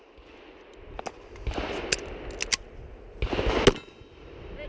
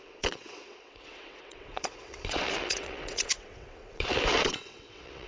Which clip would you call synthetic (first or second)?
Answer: second